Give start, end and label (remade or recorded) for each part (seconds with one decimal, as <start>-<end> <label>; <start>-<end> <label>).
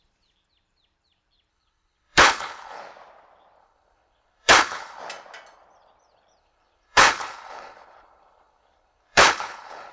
0.0-1.5 recorded; 1.5-2.8 remade; 2.8-3.6 recorded; 3.6-5.0 remade; 5.0-6.4 recorded; 6.4-9.9 remade